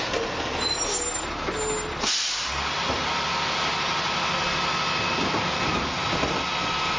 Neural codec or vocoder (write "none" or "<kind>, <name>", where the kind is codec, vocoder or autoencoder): none